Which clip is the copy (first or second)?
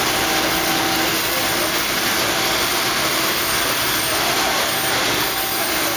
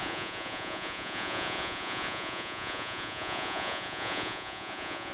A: second